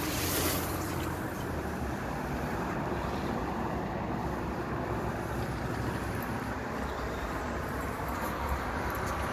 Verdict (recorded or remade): remade